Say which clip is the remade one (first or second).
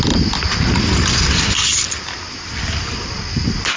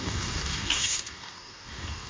second